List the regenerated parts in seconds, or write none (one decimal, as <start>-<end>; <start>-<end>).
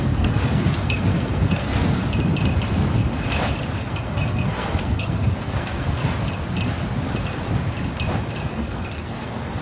0.0-2.0; 3.8-6.0; 8.5-9.6